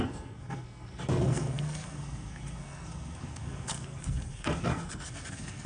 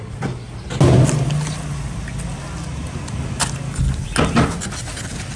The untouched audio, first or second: second